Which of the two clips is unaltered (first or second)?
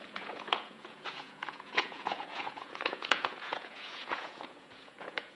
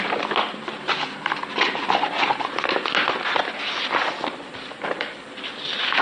second